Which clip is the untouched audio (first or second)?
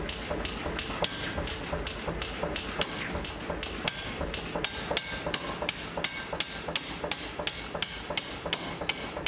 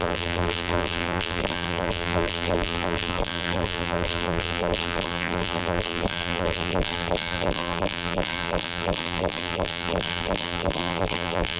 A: first